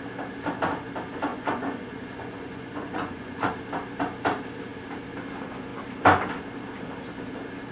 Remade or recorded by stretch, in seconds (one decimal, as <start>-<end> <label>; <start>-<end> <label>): 0.0-1.3 recorded; 1.3-3.5 remade; 3.5-7.7 recorded